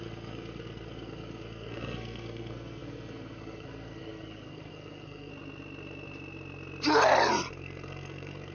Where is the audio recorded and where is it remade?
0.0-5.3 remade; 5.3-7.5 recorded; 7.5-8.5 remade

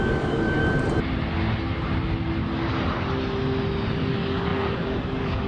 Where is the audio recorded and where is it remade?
0.0-0.6 remade; 0.6-3.9 recorded; 3.9-5.5 remade

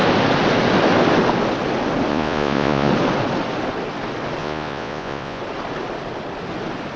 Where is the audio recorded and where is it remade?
0.0-2.1 recorded; 2.1-2.9 remade; 2.9-4.4 recorded; 4.4-5.4 remade; 5.4-7.0 recorded

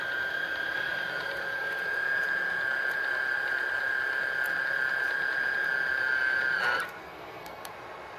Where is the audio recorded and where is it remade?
0.0-7.0 recorded; 7.0-7.7 remade; 7.7-8.2 recorded

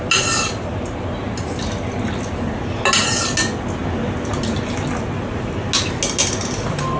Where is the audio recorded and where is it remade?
0.0-7.0 recorded

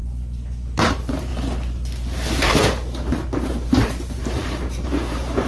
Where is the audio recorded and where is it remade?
0.0-0.9 recorded; 0.9-1.3 remade; 1.3-2.6 recorded; 2.6-5.5 remade